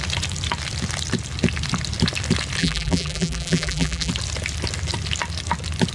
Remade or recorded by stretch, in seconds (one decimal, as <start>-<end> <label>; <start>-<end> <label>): 0.0-2.6 recorded; 2.6-4.1 remade; 4.1-5.9 recorded